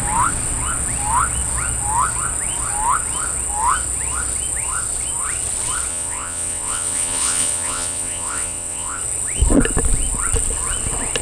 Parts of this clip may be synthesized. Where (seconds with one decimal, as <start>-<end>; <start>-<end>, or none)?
5.9-9.0